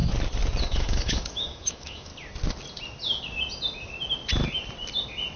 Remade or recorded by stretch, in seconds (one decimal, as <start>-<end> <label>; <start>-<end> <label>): 0.0-0.6 recorded; 0.6-2.1 remade; 2.1-5.4 recorded